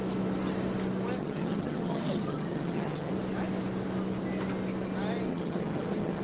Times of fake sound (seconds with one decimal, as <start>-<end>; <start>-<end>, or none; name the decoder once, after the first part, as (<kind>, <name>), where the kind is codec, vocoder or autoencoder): 1.2-3.1 (vocoder, HiFi-GAN); 5.3-6.2